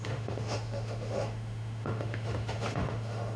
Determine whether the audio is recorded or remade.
remade